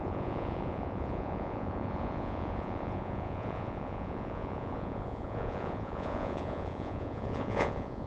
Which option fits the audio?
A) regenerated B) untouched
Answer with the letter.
A